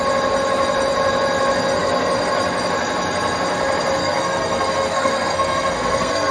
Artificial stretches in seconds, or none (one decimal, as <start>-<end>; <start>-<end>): 4.0-6.3